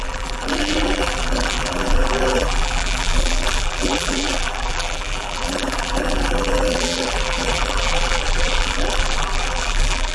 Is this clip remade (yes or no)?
yes